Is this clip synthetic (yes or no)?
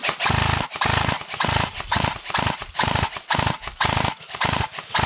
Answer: no